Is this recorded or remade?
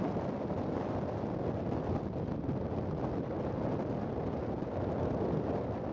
recorded